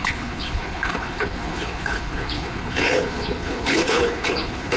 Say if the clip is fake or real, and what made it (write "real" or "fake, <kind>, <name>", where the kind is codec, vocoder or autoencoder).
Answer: fake, codec, HILCodec